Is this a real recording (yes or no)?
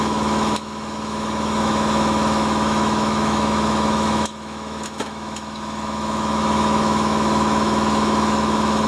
no